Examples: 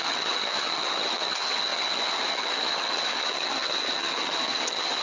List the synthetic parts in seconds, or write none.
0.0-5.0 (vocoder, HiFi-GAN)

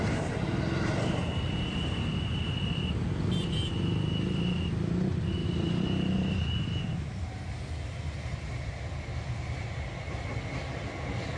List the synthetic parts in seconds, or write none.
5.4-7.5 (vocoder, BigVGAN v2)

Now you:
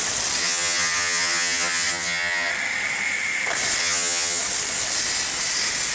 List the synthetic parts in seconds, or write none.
0.4-2.5 (vocoder, HiFi-GAN); 3.8-4.4

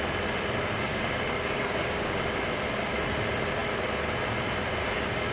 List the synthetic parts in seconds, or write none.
0.9-2.4 (codec, DAC); 4.8-5.3

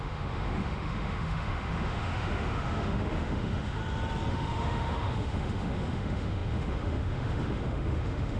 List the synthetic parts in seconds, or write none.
0.0-3.8 (autoencoder, DAC-VAE); 4.3-8.4

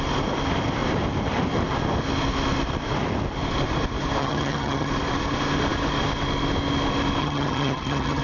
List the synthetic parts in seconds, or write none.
4.2-4.9 (vocoder, HiFi-GAN); 7.2-8.2